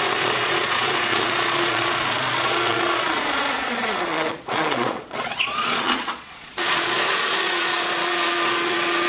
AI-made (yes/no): yes